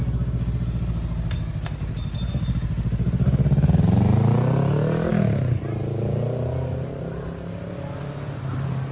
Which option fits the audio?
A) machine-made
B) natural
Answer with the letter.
B